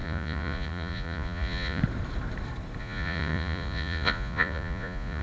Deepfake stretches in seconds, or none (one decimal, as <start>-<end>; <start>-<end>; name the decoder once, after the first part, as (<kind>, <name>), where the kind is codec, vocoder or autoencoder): 0.0-1.8 (vocoder, Vocos); 2.8-5.2